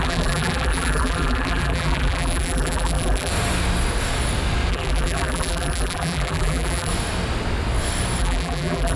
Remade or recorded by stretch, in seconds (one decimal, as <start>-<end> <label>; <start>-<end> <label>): 0.0-3.3 remade; 3.3-4.7 recorded; 4.7-6.9 remade; 6.9-8.2 recorded; 8.2-9.0 remade